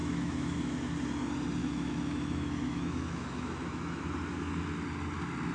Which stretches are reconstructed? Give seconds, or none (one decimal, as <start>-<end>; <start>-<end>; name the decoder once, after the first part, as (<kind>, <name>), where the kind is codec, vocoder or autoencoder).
0.0-0.6 (autoencoder, DAC-VAE); 1.6-4.0